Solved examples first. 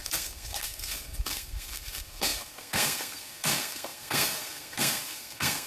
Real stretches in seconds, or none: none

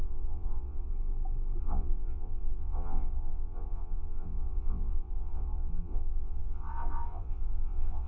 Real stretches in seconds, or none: 0.9-1.6

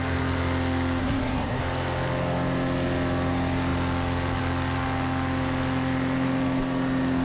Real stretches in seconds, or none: 0.0-1.0; 1.6-7.2

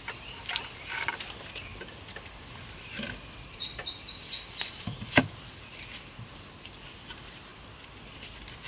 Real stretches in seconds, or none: 0.0-1.7; 3.9-7.5; 8.2-8.7

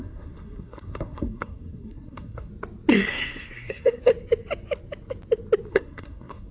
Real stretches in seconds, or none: 2.5-3.1; 4.1-5.7

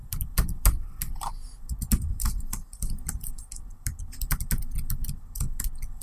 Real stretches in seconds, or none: 3.3-6.0